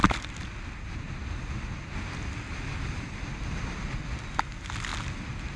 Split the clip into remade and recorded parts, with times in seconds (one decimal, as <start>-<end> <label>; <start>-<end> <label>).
0.0-5.6 recorded